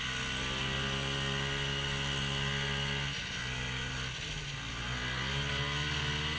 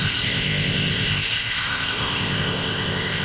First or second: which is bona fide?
first